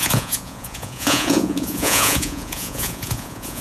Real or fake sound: fake